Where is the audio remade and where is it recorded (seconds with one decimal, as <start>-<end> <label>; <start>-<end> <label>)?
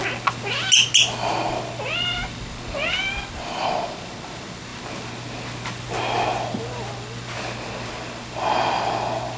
0.0-9.4 recorded